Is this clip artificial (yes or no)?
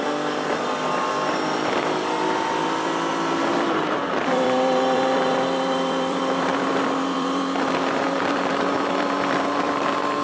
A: yes